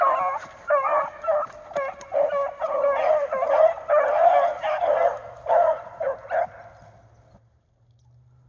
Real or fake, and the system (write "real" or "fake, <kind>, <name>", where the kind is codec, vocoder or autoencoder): real